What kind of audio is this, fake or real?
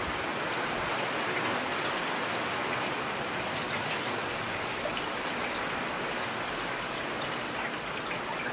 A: real